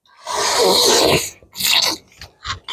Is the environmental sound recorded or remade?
recorded